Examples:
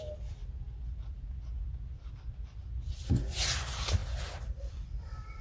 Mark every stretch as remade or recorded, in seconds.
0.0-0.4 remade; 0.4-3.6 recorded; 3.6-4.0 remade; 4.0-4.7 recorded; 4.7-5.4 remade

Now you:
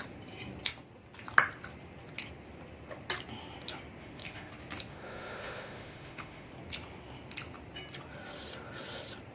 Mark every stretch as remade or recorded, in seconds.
0.0-4.0 recorded; 4.0-4.5 remade; 4.5-4.9 recorded; 4.9-6.5 remade; 6.5-9.3 recorded

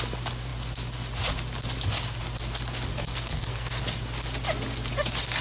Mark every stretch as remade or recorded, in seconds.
0.0-2.9 recorded; 2.9-3.8 remade; 3.8-5.4 recorded

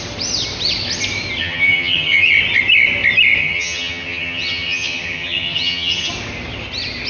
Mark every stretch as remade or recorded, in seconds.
0.0-1.4 recorded; 1.4-2.3 remade; 2.3-3.4 recorded; 3.4-6.1 remade; 6.1-7.1 recorded

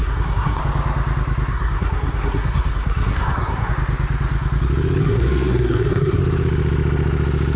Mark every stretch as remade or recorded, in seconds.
0.0-0.6 remade; 0.6-1.5 recorded; 1.5-3.7 remade; 3.7-5.0 recorded; 5.0-6.2 remade; 6.2-7.6 recorded

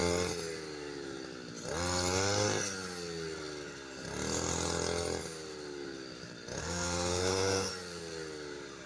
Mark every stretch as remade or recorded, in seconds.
0.0-6.6 recorded; 6.6-7.7 remade; 7.7-8.9 recorded

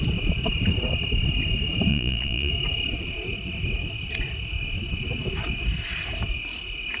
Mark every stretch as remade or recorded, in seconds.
0.0-1.9 recorded; 1.9-2.5 remade; 2.5-7.0 recorded

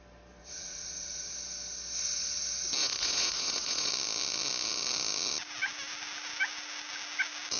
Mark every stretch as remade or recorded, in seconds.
0.0-0.4 recorded; 0.4-1.3 remade; 1.3-2.8 recorded; 2.8-3.9 remade; 3.9-7.6 recorded